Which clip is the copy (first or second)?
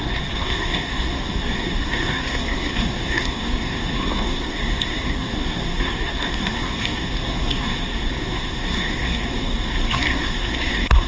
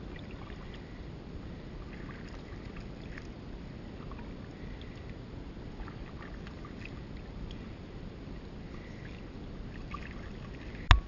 first